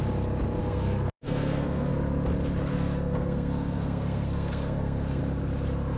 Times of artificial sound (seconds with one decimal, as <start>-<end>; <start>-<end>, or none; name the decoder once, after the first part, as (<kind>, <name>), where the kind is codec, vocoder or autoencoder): 0.6-1.9 (codec, SNAC); 2.7-5.2